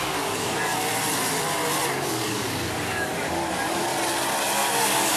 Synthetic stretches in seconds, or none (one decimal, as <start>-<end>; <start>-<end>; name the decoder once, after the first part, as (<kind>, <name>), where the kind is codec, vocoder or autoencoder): 0.0-0.7 (codec, DAC); 1.9-3.9; 4.7-5.2